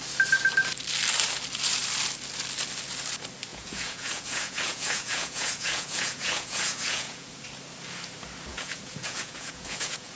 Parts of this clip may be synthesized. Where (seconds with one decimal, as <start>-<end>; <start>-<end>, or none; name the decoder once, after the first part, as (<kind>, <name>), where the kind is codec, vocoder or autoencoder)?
3.5-7.4 (vocoder, Vocos); 8.5-10.2